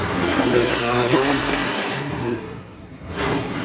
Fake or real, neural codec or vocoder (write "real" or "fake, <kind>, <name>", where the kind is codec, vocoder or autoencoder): fake, codec, SNAC